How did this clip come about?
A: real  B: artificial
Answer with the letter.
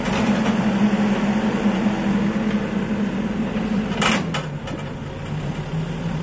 A